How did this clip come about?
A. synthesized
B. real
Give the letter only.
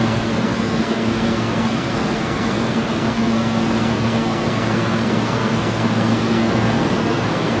A